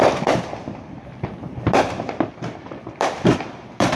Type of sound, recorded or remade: remade